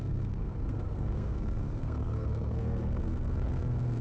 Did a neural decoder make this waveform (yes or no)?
yes